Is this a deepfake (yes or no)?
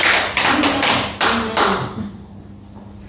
no